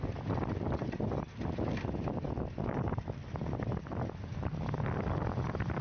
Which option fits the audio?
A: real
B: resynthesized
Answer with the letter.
A